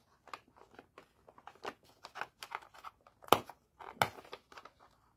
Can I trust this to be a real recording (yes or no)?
yes